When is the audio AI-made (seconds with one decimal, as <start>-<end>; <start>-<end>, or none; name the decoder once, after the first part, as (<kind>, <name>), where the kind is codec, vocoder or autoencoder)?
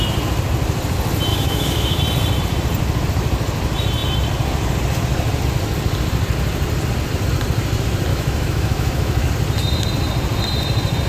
1.3-2.0 (autoencoder, DAC-VAE); 8.1-9.3